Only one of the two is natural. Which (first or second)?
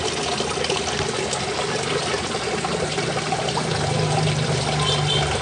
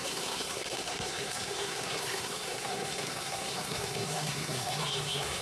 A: first